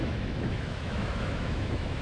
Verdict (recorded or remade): remade